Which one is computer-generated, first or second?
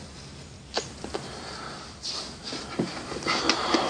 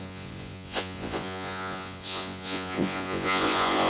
second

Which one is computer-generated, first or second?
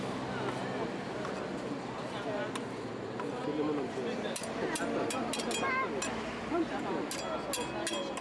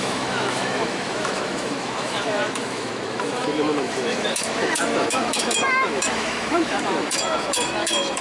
second